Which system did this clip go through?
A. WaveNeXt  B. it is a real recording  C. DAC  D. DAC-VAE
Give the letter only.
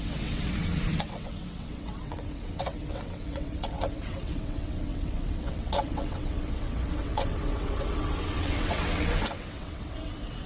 A